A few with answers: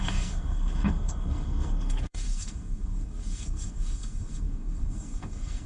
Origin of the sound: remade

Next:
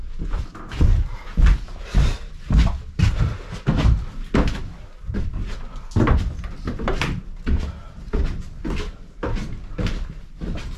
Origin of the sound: recorded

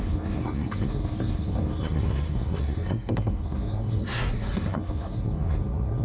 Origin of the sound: remade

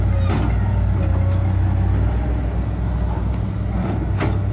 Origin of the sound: recorded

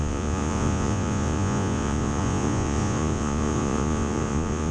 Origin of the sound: remade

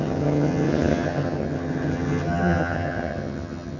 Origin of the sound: remade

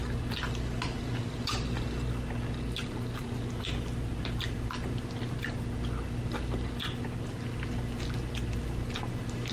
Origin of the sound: recorded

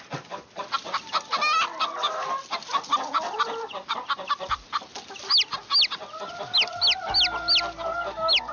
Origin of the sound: recorded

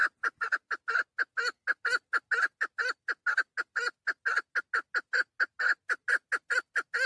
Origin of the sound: recorded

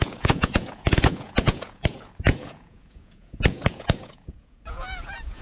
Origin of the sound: remade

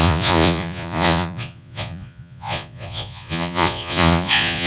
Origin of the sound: remade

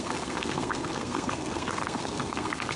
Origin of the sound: remade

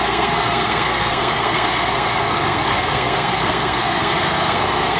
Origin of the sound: remade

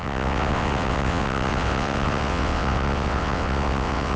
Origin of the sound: remade